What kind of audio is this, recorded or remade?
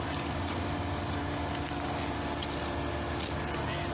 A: recorded